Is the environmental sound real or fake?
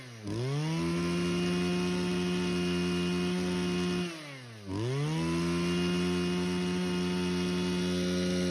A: real